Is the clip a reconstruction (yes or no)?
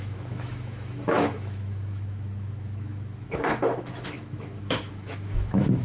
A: yes